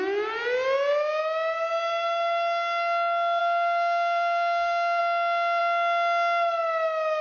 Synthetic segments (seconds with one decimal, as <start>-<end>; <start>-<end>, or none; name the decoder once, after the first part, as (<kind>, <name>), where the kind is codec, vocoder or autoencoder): 3.4-5.0 (vocoder, BigVGAN v2)